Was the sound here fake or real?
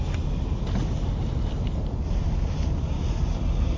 real